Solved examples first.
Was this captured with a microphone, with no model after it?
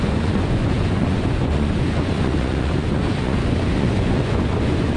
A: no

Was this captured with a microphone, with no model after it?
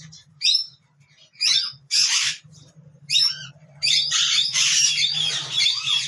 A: no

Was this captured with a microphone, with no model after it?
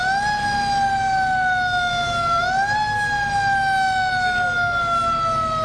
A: yes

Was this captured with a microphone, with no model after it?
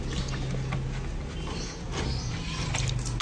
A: yes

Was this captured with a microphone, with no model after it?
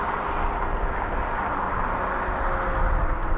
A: yes